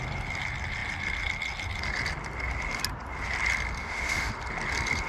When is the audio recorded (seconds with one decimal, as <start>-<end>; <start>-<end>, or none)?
0.0-3.8; 4.3-5.1